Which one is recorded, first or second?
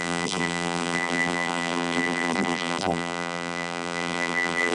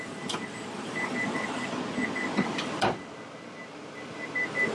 second